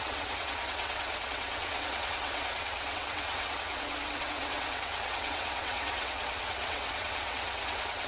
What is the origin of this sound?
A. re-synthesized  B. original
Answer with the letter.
A